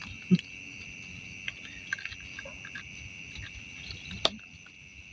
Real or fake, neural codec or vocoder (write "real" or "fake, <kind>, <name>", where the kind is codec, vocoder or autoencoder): real